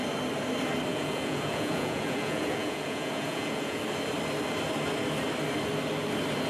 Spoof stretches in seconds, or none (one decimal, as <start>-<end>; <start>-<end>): 0.9-3.8